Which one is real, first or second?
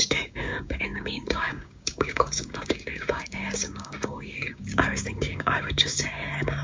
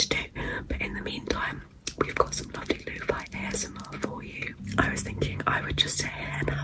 second